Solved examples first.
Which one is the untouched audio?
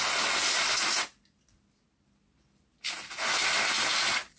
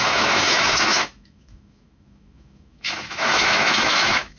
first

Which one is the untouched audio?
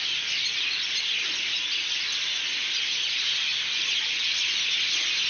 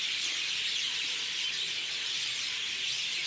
first